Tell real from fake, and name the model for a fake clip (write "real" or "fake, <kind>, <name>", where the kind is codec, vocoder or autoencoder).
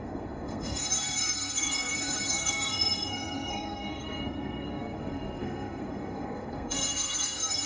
fake, codec, SNAC